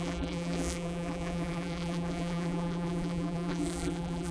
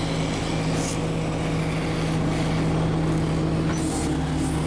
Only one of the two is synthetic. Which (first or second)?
first